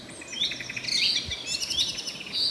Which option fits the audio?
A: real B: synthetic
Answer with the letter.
A